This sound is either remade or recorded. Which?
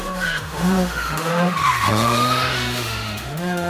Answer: remade